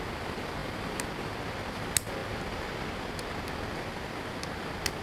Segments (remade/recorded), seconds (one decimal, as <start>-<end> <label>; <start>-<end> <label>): 0.0-5.0 recorded

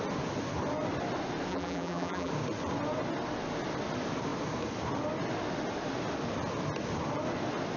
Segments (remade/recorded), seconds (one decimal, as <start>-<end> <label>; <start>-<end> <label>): 0.0-1.5 recorded; 1.5-2.3 remade; 2.3-7.8 recorded

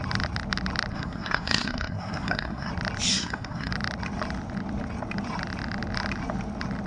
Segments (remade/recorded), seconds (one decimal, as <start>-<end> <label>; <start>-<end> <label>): 0.0-0.9 recorded; 0.9-2.7 remade; 2.7-3.1 recorded; 3.1-3.7 remade; 3.7-6.9 recorded

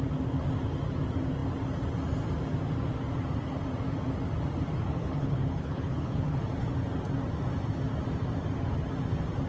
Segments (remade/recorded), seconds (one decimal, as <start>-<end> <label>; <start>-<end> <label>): 0.0-4.9 recorded; 4.9-6.4 remade; 6.4-9.5 recorded

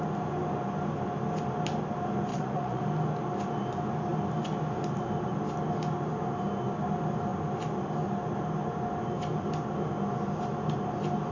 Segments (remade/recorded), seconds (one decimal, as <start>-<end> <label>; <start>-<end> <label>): 0.0-2.3 recorded; 2.3-2.8 remade; 2.8-11.3 recorded

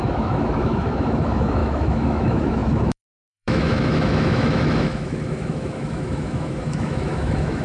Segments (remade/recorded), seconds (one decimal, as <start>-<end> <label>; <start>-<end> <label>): 0.0-7.6 remade

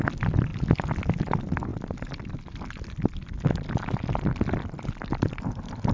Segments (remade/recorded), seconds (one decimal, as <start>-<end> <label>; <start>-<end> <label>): 0.0-0.5 remade; 0.5-1.2 recorded; 1.2-1.7 remade; 1.7-2.2 recorded; 2.2-5.9 remade

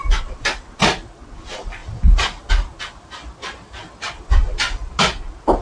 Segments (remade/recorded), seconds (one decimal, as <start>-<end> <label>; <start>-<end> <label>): 0.0-5.6 recorded